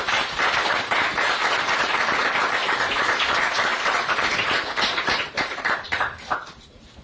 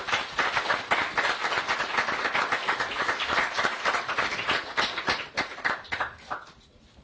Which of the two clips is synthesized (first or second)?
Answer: first